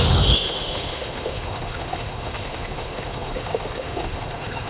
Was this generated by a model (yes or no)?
yes